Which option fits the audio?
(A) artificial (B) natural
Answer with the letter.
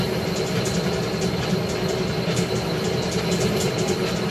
B